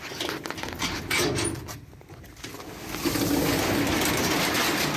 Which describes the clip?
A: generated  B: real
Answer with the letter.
B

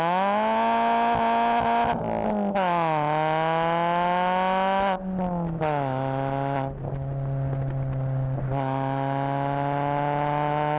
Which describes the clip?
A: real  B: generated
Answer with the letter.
A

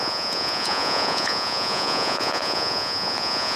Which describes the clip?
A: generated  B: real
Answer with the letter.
A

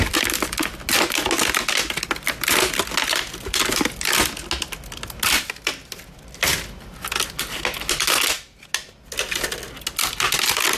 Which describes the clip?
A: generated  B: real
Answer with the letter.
B